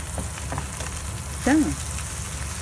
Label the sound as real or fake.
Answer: real